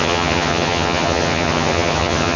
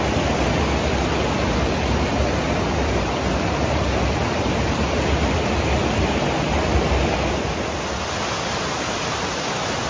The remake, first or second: first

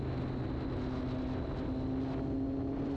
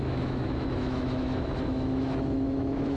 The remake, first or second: second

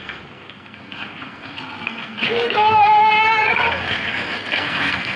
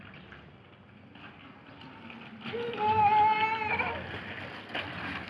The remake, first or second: first